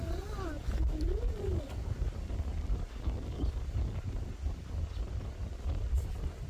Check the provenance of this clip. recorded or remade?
recorded